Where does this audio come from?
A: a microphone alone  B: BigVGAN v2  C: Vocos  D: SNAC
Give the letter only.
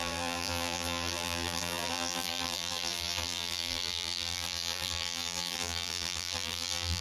B